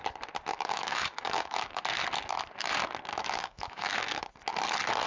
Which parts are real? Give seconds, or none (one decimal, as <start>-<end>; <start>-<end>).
0.0-0.5; 1.8-3.1; 4.3-5.1